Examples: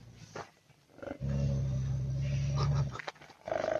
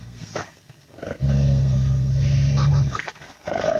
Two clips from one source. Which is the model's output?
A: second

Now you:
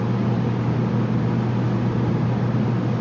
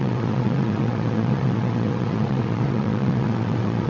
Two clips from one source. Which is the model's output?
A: second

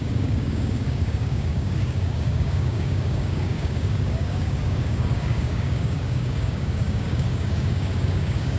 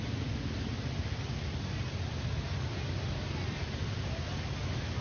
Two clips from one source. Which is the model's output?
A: first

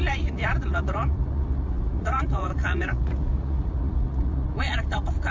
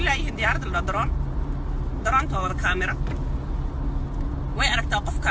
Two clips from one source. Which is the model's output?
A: first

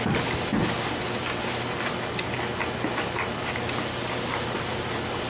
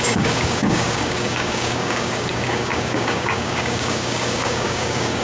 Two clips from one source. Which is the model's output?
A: second